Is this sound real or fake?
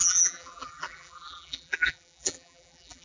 fake